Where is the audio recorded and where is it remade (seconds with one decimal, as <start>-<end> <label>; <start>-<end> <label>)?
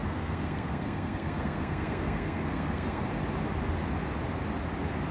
0.0-3.1 remade; 3.1-5.1 recorded